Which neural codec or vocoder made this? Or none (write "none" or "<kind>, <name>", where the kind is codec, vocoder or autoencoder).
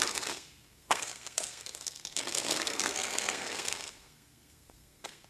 codec, SNAC